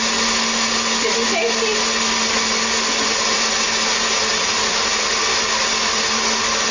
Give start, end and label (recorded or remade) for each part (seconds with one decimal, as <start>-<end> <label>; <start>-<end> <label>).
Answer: 0.0-6.7 recorded